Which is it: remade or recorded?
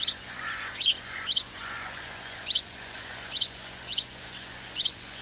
remade